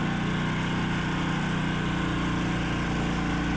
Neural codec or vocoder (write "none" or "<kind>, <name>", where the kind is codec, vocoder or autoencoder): none